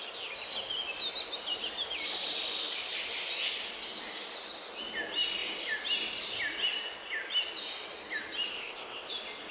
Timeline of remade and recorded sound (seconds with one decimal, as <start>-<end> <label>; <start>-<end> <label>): 0.0-8.5 recorded; 8.5-9.1 remade; 9.1-9.5 recorded